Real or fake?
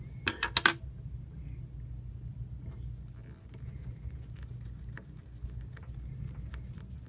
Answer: real